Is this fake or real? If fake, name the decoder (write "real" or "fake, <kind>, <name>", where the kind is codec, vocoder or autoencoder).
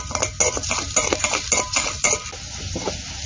real